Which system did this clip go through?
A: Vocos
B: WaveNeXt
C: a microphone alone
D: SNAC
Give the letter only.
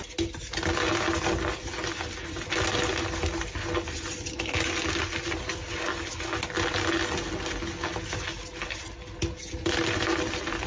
C